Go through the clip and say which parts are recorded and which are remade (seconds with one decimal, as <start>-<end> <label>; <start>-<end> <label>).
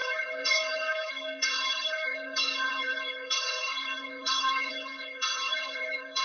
0.0-6.2 remade